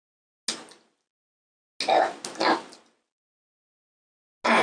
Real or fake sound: real